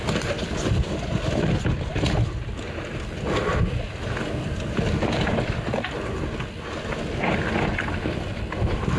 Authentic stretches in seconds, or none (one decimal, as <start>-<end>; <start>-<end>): 0.0-9.0